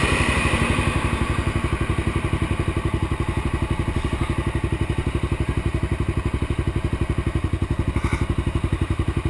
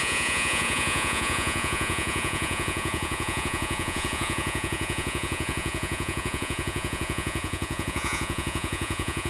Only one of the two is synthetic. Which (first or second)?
second